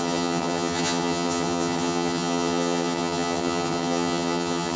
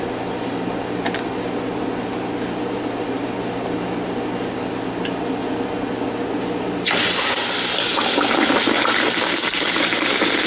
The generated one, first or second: first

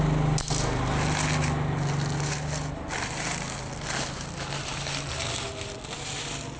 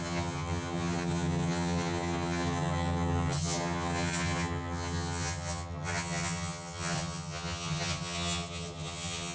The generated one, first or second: second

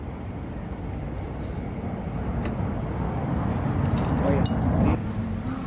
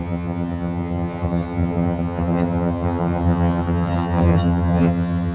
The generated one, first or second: second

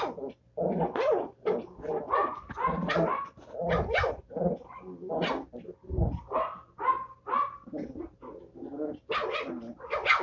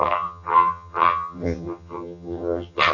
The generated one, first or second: second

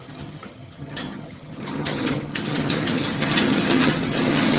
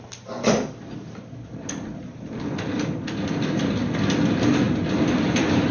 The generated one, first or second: first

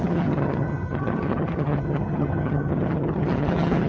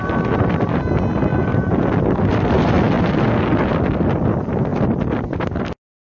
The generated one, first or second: first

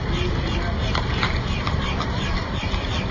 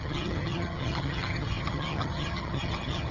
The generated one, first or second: second